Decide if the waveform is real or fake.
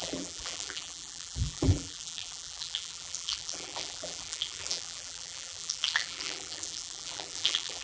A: fake